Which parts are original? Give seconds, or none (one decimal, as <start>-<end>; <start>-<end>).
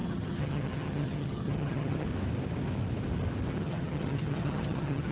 2.1-3.5